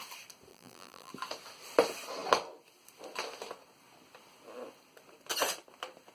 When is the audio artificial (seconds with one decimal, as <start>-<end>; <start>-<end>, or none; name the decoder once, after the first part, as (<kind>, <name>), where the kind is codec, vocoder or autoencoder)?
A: 0.5-1.1 (vocoder, BigVGAN v2)